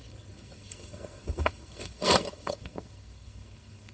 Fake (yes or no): yes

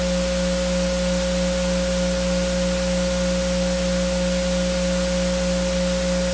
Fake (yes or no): no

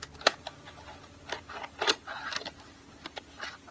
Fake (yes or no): no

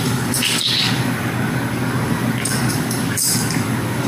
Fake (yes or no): yes